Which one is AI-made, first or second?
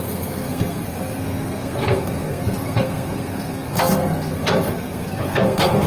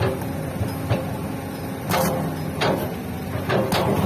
first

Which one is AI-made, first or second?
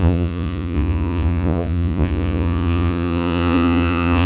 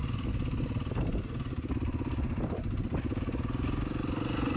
first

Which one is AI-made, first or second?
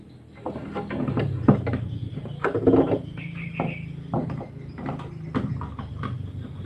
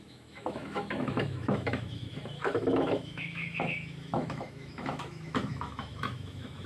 second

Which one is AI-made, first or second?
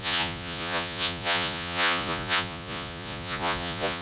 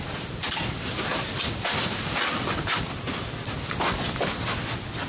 first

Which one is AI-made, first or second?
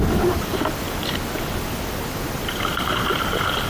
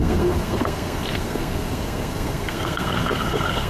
second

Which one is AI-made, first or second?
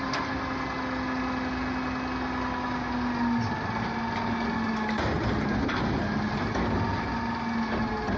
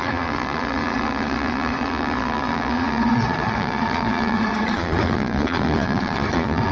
second